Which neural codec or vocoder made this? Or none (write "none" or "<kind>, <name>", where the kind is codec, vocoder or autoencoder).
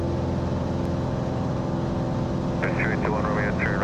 none